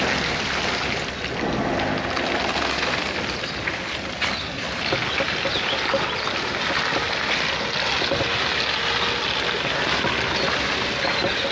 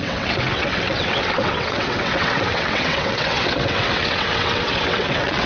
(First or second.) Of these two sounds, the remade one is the second